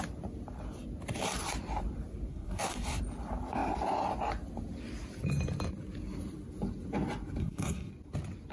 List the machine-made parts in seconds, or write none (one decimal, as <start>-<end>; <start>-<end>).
2.3-3.0; 7.4-7.9